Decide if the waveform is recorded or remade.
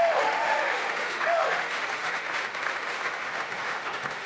remade